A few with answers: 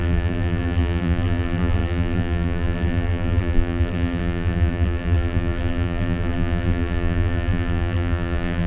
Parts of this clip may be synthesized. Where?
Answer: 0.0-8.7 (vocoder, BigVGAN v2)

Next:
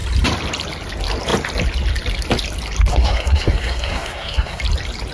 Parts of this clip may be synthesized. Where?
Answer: 2.9-4.6 (codec, SNAC)

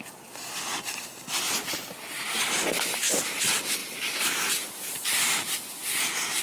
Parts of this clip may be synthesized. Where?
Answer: 3.8-6.4 (vocoder, BigVGAN v2)